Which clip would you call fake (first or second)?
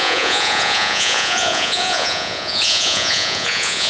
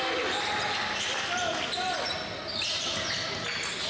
first